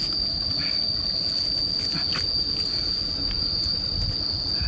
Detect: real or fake real